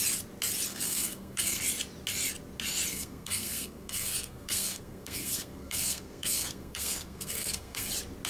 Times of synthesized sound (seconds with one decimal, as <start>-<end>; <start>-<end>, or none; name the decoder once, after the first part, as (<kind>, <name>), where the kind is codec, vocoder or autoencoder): 0.7-1.6 (codec, SNAC); 2.9-7.9